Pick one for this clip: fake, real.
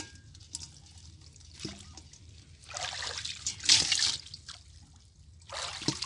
real